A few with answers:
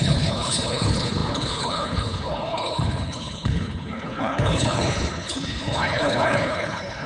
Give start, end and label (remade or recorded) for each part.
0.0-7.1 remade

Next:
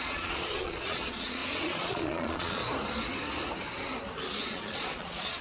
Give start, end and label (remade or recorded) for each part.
0.0-2.6 remade; 2.6-4.4 recorded; 4.4-5.4 remade

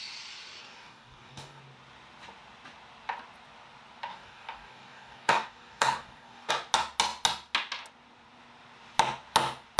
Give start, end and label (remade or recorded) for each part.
0.0-0.6 recorded; 0.6-1.6 remade; 1.6-4.1 recorded; 4.1-6.5 remade; 6.5-9.8 recorded

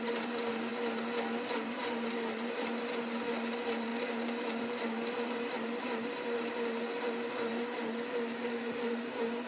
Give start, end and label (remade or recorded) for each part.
0.0-0.7 remade; 0.7-1.5 recorded; 1.5-9.5 remade

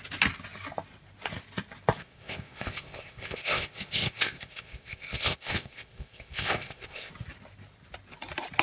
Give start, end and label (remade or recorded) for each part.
0.0-2.0 recorded; 2.0-7.1 remade; 7.1-8.6 recorded

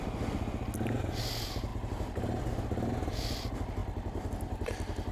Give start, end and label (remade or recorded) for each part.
0.0-5.1 recorded

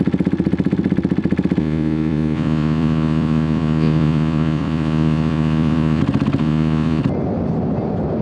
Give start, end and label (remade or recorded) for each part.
0.0-1.6 recorded; 1.6-6.0 remade; 6.0-6.4 recorded; 6.4-7.0 remade; 7.0-8.2 recorded

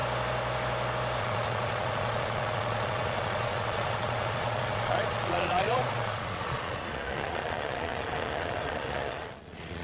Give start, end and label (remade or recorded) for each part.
0.0-1.2 recorded; 1.2-9.8 remade